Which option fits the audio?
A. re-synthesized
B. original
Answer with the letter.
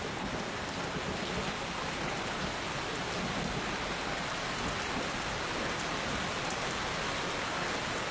B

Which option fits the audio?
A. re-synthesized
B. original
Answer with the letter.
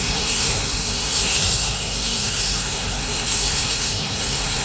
A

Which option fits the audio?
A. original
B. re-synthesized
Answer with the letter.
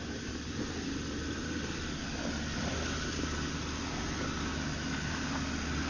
A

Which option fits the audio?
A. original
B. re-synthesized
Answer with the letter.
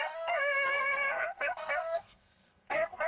B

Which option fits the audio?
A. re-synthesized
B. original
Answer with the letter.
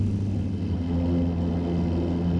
B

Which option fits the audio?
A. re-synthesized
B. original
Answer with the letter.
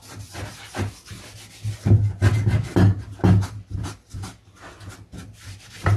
B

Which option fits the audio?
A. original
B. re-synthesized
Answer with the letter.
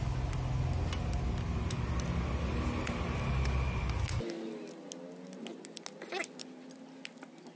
A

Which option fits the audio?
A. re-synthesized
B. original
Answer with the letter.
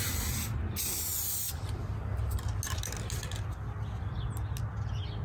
B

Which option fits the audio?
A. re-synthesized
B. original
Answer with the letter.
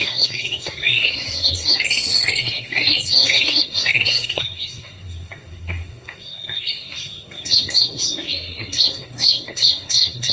A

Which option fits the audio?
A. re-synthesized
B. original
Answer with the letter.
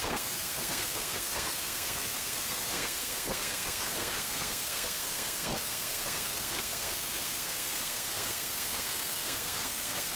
A